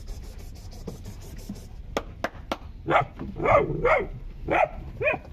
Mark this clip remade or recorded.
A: recorded